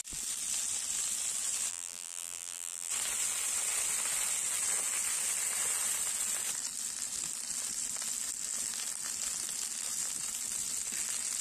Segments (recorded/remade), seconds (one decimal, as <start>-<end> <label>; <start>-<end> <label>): 0.0-1.7 recorded; 1.7-2.9 remade; 2.9-11.4 recorded